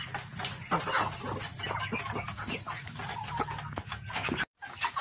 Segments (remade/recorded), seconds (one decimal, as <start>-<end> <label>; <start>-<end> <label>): 0.0-5.0 recorded

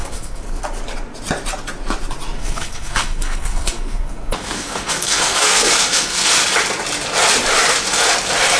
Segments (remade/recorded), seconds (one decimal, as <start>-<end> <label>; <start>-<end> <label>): 0.0-0.6 remade; 0.6-2.4 recorded; 2.4-6.3 remade; 6.3-8.6 recorded

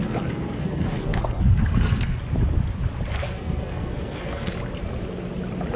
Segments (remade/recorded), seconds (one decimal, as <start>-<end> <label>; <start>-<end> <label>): 0.0-2.2 remade; 2.2-3.2 recorded; 3.2-4.5 remade; 4.5-5.8 recorded

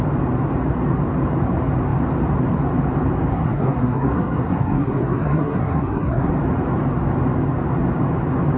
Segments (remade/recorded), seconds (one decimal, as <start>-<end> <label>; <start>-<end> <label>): 0.0-3.3 recorded; 3.3-6.3 remade; 6.3-8.6 recorded

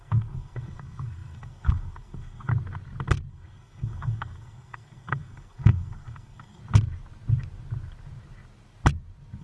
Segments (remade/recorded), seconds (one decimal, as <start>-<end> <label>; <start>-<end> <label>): 0.0-2.5 remade; 2.5-3.3 recorded; 3.3-6.6 remade; 6.6-9.4 recorded

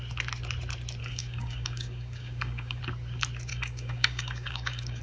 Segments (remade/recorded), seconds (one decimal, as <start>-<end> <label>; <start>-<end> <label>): 0.0-1.0 recorded; 1.0-2.8 remade; 2.8-3.5 recorded; 3.5-5.0 remade